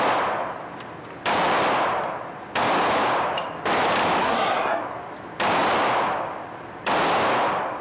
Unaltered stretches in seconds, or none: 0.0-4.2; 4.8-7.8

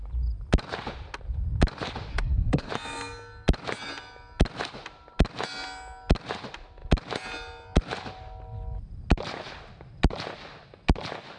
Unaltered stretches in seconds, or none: 0.0-2.1; 2.7-11.4

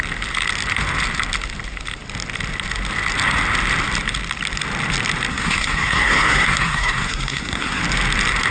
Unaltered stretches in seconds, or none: 0.0-5.3; 7.8-8.5

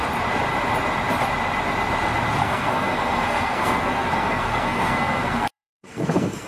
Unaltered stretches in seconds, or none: 0.0-2.4